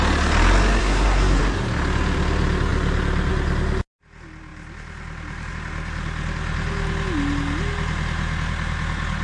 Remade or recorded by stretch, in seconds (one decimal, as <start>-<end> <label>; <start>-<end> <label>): 0.0-0.8 recorded; 0.8-1.4 remade; 1.4-9.2 recorded